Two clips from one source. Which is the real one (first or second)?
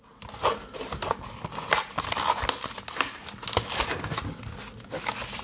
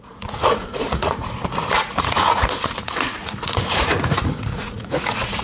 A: first